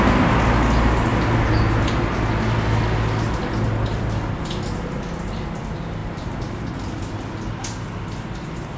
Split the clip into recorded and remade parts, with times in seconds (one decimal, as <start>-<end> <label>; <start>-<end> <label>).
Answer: 0.0-8.8 recorded